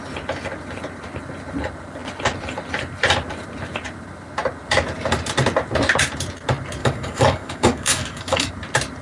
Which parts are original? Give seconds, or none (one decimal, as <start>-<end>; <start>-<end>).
0.0-6.8; 8.5-9.0